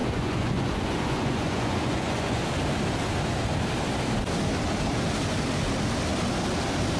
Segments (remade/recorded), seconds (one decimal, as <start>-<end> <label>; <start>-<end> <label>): 0.0-2.4 remade; 2.4-7.0 recorded